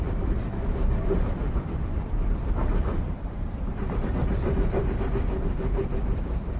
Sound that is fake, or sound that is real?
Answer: fake